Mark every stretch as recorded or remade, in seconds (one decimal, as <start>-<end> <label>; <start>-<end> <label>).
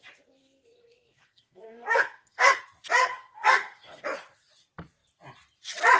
0.0-0.4 recorded; 0.4-2.6 remade; 2.6-3.0 recorded; 3.0-4.0 remade; 4.0-6.0 recorded